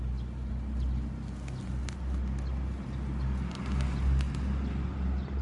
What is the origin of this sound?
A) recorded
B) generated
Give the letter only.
A